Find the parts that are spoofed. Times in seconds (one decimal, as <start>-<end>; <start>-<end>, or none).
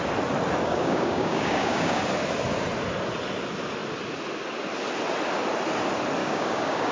0.6-2.0; 6.2-6.9